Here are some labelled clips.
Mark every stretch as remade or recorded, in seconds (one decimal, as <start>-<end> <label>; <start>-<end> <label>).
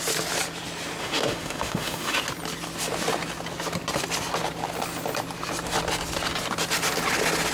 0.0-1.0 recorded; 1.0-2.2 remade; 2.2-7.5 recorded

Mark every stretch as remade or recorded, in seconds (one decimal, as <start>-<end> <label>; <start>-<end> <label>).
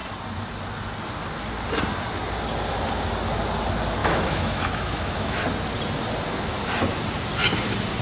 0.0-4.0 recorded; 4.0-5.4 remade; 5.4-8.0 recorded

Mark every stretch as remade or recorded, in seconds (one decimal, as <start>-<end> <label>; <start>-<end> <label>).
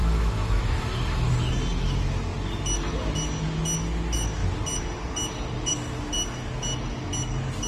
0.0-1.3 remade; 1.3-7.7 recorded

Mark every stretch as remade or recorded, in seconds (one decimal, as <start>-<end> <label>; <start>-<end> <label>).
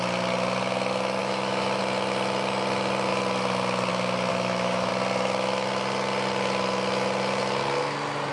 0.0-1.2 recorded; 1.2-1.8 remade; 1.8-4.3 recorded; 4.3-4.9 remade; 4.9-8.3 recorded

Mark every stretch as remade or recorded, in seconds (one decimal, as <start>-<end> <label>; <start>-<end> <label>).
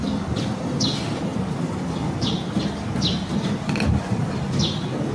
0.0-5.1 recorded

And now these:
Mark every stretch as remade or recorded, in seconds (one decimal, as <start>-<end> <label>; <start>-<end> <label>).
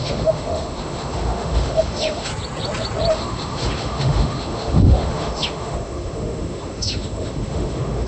0.0-2.3 remade; 2.3-3.1 recorded; 3.1-8.1 remade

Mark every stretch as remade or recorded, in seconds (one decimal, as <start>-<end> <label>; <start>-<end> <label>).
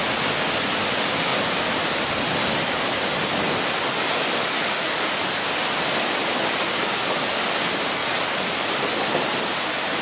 0.0-10.0 recorded